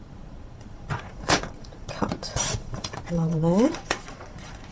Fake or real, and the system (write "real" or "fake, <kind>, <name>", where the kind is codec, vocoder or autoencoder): fake, vocoder, Vocos